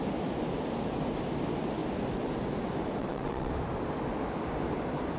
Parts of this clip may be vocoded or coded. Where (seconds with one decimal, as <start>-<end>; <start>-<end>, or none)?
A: 3.0-3.5